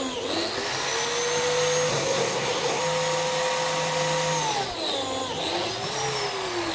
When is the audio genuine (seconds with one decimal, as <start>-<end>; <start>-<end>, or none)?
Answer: 0.0-1.9; 2.8-6.7